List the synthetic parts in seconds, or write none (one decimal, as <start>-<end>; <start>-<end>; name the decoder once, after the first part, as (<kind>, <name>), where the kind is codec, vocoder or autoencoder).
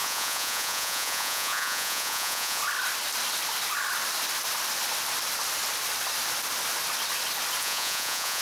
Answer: 0.0-2.6 (vocoder, Vocos); 7.6-8.4